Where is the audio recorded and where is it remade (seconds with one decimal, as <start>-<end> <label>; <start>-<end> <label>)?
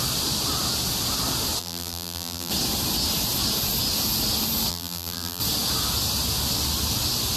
0.0-1.6 recorded; 1.6-2.5 remade; 2.5-4.7 recorded; 4.7-5.4 remade; 5.4-7.4 recorded